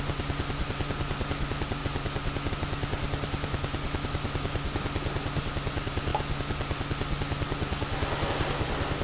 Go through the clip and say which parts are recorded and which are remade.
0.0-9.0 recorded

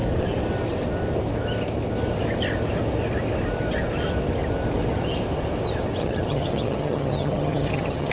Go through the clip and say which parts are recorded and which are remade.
0.0-6.0 recorded; 6.0-8.1 remade

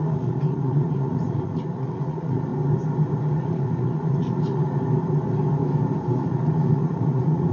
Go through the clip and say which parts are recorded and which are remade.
0.0-2.5 remade; 2.5-3.3 recorded; 3.3-4.6 remade; 4.6-6.2 recorded; 6.2-7.5 remade

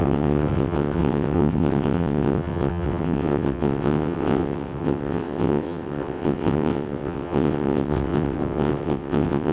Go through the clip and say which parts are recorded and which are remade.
0.0-9.5 remade

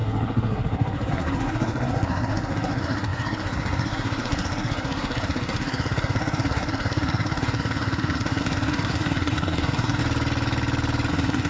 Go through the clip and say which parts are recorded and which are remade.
0.0-10.0 remade; 10.0-11.1 recorded; 11.1-11.5 remade